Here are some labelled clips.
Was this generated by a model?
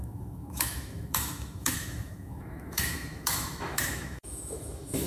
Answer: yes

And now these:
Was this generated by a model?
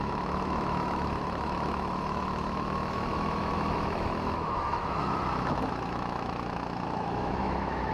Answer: yes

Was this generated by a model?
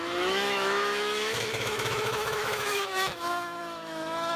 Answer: yes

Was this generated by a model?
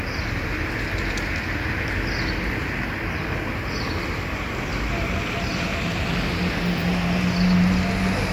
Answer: no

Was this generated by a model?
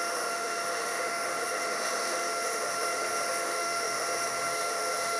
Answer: yes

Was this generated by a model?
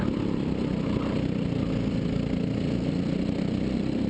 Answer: no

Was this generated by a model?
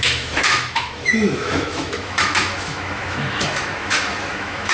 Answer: yes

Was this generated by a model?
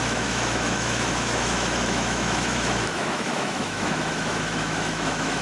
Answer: yes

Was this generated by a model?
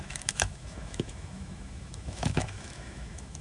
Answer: yes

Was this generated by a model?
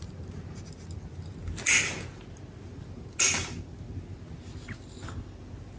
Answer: no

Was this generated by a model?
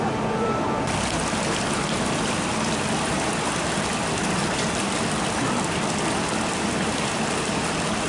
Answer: no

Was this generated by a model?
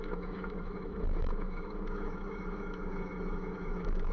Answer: yes